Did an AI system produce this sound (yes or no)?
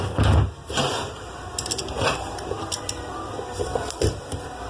no